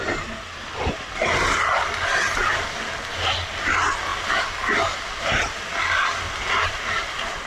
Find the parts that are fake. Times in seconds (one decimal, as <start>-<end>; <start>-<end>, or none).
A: none